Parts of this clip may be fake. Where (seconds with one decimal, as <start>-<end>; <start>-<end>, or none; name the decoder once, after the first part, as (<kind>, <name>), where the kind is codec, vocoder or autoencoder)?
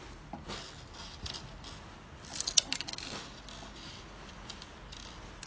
none